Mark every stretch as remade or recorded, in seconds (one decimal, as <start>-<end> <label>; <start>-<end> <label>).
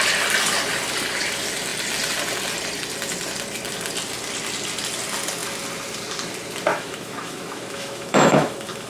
0.0-6.7 recorded; 6.7-8.9 remade